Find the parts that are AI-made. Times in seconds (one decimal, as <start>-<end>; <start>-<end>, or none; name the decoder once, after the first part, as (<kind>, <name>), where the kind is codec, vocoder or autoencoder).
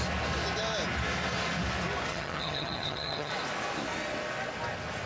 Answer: 2.1-3.3 (vocoder, HiFi-GAN)